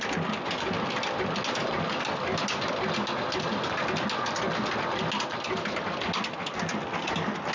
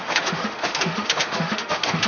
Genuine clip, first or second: first